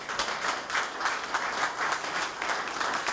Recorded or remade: recorded